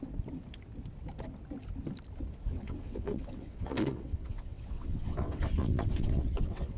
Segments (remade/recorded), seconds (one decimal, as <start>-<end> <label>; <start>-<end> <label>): 0.0-2.5 recorded; 2.5-6.8 remade